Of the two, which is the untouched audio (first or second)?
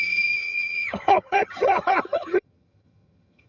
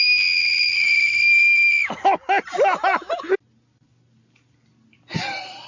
second